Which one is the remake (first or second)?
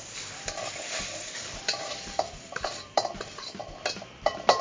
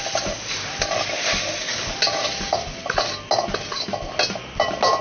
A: first